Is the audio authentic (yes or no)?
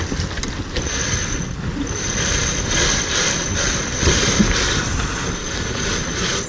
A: yes